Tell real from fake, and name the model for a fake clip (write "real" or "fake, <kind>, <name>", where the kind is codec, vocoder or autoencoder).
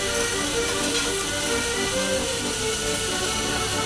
real